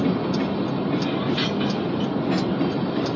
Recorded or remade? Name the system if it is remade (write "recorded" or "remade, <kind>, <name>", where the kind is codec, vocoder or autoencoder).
recorded